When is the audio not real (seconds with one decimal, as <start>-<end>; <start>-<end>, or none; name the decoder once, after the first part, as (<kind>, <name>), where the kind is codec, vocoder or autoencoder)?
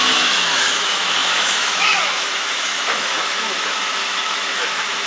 0.0-5.1 (autoencoder, DAC-VAE)